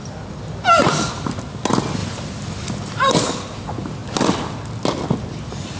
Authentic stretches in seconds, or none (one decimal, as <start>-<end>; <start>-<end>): 0.0-5.8